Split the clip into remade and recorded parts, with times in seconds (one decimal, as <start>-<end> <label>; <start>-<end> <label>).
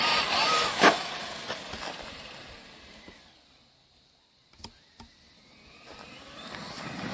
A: 0.0-0.5 recorded; 0.5-1.1 remade; 1.1-7.1 recorded